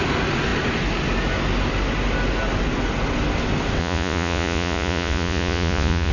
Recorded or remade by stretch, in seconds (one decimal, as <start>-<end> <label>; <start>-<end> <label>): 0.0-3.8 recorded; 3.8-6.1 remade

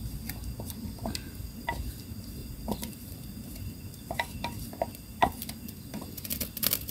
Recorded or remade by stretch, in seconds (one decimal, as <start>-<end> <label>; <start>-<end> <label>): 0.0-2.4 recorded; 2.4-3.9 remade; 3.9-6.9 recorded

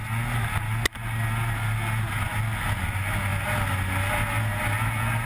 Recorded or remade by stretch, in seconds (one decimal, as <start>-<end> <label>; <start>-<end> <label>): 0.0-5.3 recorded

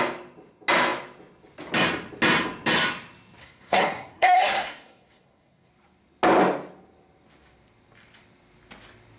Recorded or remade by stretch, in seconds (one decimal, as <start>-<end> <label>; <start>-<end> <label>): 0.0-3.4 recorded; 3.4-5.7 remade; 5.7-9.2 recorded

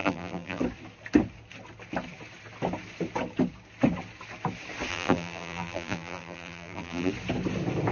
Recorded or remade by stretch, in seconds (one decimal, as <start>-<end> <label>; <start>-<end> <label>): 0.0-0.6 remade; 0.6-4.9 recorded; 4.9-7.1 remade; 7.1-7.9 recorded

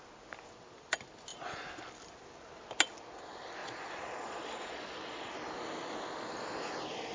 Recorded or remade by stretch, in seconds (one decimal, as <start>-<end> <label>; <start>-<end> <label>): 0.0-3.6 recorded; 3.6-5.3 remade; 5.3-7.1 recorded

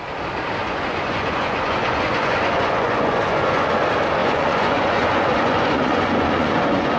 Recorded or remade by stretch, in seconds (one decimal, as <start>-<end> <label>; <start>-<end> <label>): 0.0-0.6 recorded; 0.6-3.8 remade; 3.8-4.2 recorded; 4.2-7.0 remade